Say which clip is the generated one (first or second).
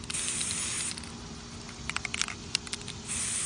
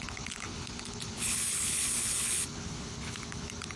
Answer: second